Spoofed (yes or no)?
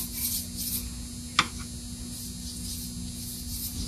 no